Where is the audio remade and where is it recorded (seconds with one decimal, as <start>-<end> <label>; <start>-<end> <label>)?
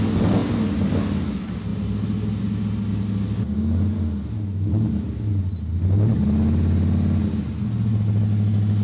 0.0-0.4 recorded; 0.4-0.9 remade; 0.9-8.8 recorded